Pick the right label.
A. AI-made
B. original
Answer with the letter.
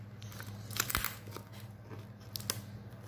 B